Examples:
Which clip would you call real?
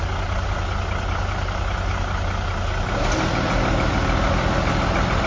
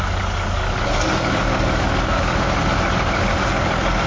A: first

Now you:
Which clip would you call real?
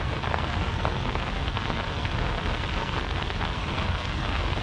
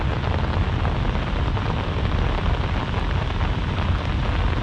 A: second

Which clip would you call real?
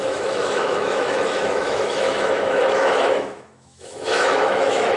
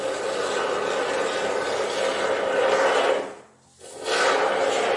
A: second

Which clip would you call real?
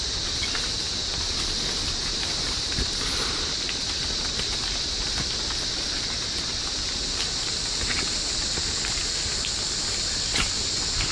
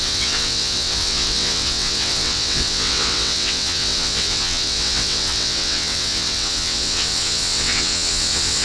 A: first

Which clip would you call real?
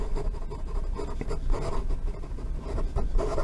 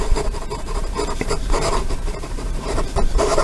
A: first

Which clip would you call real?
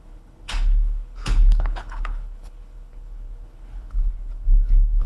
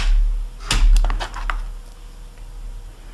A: second